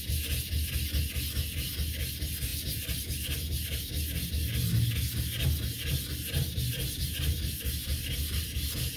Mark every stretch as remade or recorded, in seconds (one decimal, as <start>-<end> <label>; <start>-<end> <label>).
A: 0.0-9.0 recorded